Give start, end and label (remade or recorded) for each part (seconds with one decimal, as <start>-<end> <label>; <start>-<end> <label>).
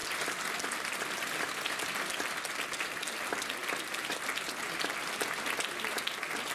0.0-6.5 recorded